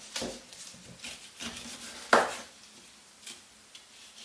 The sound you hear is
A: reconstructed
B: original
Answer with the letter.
B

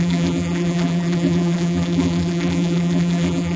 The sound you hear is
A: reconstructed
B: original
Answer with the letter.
A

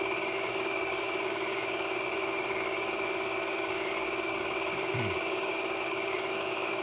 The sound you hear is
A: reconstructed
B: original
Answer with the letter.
A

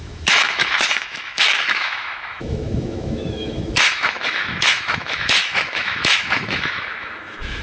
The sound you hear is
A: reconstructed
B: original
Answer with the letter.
A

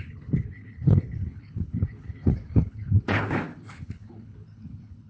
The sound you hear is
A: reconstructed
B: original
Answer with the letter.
A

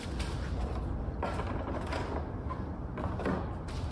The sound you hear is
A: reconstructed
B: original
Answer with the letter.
B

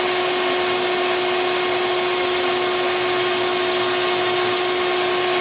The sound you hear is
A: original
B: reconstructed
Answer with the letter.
A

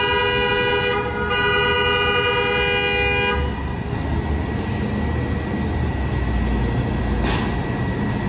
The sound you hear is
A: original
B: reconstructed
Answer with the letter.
A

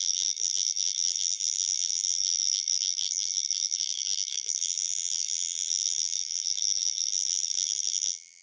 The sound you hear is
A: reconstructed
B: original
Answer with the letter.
A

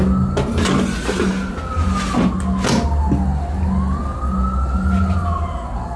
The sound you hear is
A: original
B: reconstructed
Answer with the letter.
A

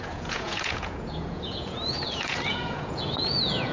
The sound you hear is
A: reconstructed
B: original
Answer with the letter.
A